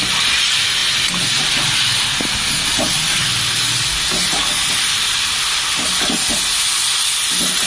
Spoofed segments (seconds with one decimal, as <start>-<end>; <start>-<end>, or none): none